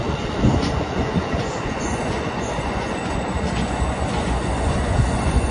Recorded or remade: remade